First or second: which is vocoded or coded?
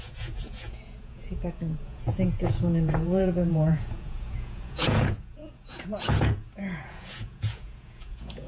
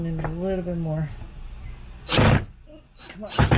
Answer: first